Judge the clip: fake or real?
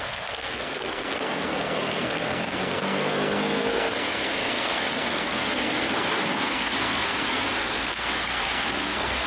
fake